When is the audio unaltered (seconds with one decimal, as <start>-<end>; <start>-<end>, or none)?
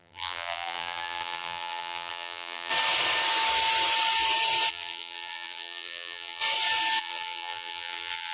2.7-4.7; 6.4-7.0